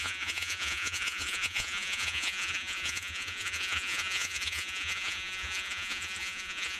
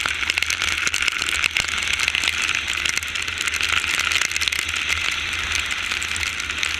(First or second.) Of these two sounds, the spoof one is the first